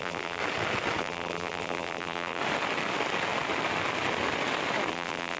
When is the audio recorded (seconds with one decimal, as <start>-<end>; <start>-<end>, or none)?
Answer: 0.4-1.0; 2.4-4.9